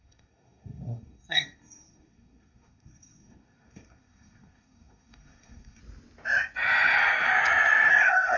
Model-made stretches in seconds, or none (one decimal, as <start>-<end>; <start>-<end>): 0.0-5.8; 7.9-8.4